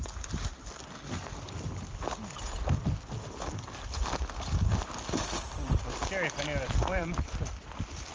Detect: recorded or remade recorded